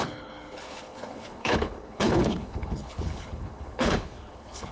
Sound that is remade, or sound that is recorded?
remade